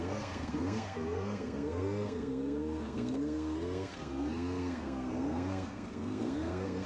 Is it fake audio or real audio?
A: fake